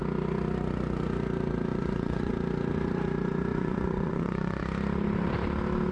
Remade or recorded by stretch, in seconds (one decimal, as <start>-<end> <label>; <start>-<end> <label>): 0.0-1.7 recorded; 1.7-2.3 remade; 2.3-3.5 recorded; 3.5-4.6 remade; 4.6-5.9 recorded